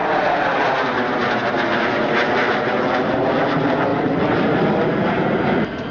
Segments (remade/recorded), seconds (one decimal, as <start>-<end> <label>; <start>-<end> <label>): 0.0-3.9 recorded; 3.9-5.2 remade; 5.2-5.9 recorded